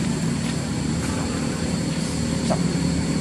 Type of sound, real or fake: fake